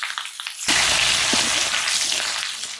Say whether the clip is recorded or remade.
recorded